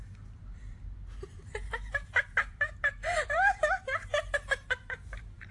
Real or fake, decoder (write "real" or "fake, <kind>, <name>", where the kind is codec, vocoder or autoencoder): fake, vocoder, BigVGAN v2